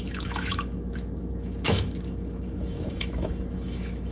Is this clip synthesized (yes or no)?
yes